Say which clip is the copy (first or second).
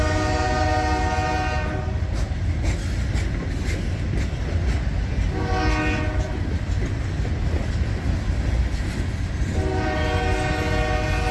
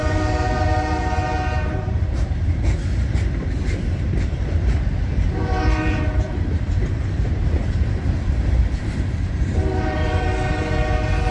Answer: second